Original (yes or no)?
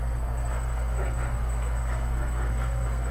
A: no